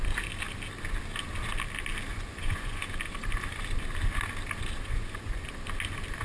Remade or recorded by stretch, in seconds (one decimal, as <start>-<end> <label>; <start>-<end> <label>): 0.0-2.1 recorded; 2.1-2.8 remade; 2.8-4.8 recorded; 4.8-5.5 remade; 5.5-6.2 recorded